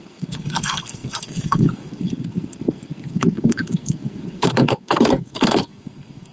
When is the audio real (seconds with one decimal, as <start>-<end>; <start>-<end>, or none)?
none